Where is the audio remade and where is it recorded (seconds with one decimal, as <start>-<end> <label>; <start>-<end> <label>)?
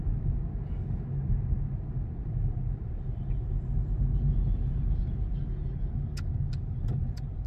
0.0-2.2 recorded; 2.2-5.3 remade; 5.3-7.1 recorded; 7.1-7.5 remade